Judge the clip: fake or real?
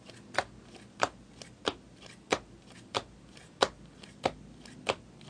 real